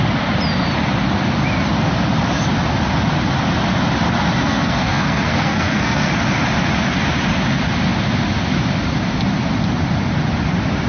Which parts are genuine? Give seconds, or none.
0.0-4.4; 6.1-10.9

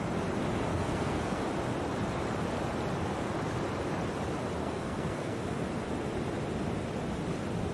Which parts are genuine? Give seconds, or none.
0.0-0.7; 1.4-4.6; 5.4-7.7

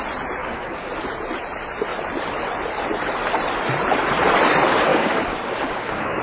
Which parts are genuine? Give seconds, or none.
0.0-0.4; 0.9-4.9